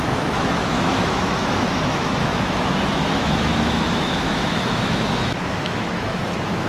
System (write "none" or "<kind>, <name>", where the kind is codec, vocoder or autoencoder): autoencoder, DAC-VAE